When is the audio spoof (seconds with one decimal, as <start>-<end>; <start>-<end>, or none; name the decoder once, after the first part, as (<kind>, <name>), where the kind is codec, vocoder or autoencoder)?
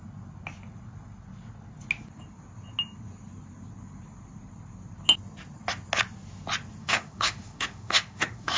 6.8-8.6 (autoencoder, DAC-VAE)